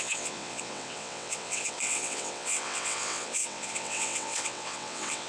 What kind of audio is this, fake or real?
fake